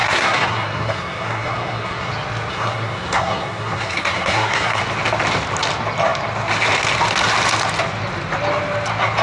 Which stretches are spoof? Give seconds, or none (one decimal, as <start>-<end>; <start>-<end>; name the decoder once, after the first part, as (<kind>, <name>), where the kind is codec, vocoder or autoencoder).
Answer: 0.0-2.1 (codec, SNAC); 2.5-4.8